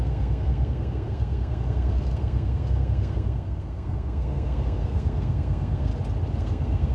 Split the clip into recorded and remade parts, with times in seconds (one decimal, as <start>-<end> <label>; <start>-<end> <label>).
0.0-5.9 remade; 5.9-6.4 recorded; 6.4-6.9 remade